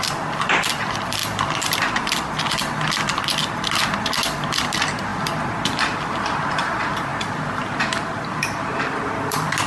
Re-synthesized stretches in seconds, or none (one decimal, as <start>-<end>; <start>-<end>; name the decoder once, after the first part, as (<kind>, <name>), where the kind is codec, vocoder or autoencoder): 0.0-1.2 (vocoder, BigVGAN v2); 2.9-7.1; 8.3-9.7